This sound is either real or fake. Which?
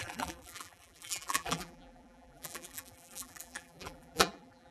fake